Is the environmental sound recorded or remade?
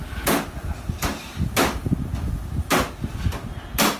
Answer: recorded